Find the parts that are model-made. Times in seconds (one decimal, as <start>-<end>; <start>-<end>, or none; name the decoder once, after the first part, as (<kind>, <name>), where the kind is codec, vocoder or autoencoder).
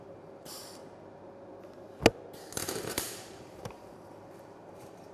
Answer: 0.0-0.8 (vocoder, BigVGAN v2); 2.6-5.1